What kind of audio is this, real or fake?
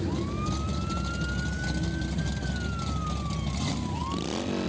real